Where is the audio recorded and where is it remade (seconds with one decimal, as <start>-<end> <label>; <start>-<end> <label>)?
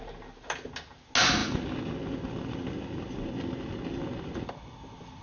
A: 0.0-5.2 recorded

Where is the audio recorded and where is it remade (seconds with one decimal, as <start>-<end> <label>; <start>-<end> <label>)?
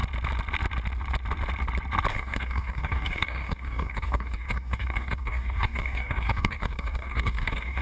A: 0.0-2.1 recorded; 2.1-7.8 remade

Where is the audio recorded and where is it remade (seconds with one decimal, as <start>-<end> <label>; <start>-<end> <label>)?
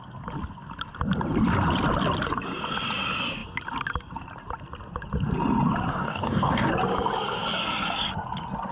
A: 0.0-5.9 recorded; 5.9-6.7 remade; 6.7-8.7 recorded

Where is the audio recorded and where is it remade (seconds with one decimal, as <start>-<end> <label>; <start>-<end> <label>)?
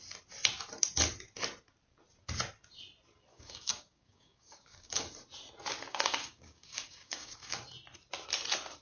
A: 0.0-3.3 recorded; 3.3-5.1 remade; 5.1-5.9 recorded; 5.9-7.6 remade; 7.6-8.8 recorded